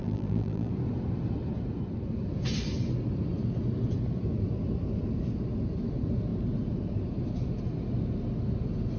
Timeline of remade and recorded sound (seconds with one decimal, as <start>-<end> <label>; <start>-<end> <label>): 0.0-0.7 remade; 0.7-9.0 recorded